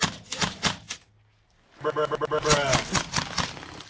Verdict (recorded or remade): recorded